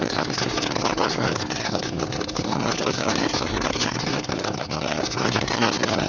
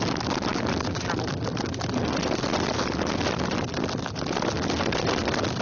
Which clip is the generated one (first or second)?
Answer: first